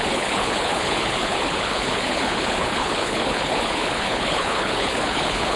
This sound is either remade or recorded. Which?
remade